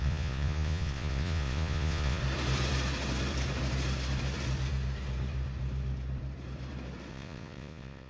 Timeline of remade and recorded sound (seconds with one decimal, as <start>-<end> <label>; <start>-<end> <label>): 0.0-2.2 remade; 2.2-7.1 recorded; 7.1-8.1 remade